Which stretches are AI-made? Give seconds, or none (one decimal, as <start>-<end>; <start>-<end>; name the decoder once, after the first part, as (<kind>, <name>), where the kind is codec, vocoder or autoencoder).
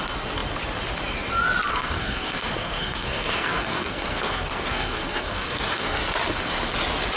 1.7-6.0 (codec, SNAC)